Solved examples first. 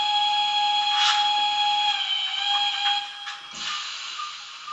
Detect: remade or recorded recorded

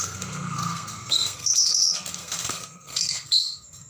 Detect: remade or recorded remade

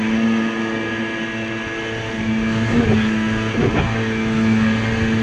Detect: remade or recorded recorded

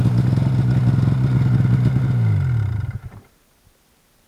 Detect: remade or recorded recorded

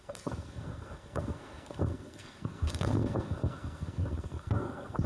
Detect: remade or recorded remade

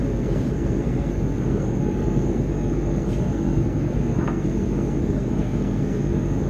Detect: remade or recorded remade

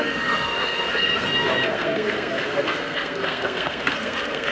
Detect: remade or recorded remade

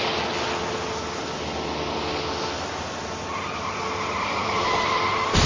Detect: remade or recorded recorded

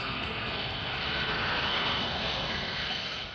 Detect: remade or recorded remade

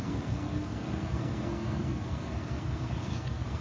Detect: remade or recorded remade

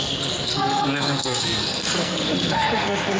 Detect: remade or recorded remade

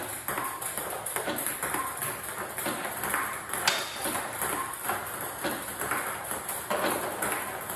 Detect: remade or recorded recorded